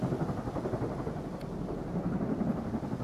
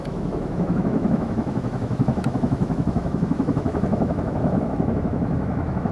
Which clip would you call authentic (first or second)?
first